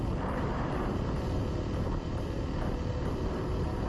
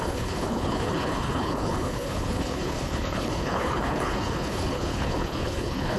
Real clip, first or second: first